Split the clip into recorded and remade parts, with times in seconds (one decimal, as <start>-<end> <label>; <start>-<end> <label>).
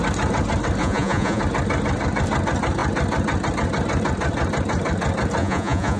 0.0-0.8 recorded; 0.8-1.4 remade; 1.4-5.4 recorded; 5.4-6.0 remade